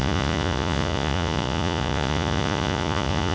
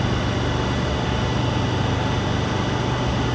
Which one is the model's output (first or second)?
first